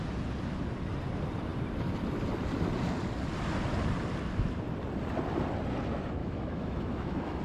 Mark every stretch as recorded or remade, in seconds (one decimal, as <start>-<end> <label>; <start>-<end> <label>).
0.0-6.2 recorded; 6.2-7.4 remade